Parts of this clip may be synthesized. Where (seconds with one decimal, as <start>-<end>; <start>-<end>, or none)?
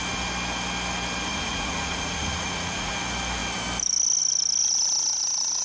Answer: 1.3-2.9